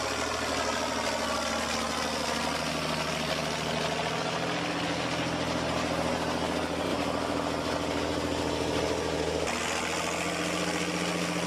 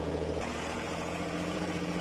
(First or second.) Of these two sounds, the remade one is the second